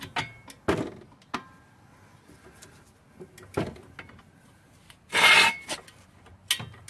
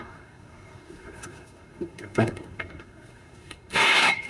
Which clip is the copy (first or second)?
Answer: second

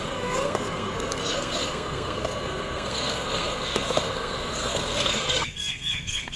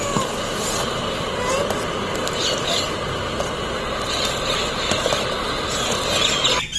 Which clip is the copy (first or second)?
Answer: first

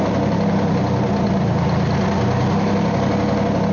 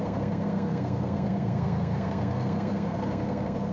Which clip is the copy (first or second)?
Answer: second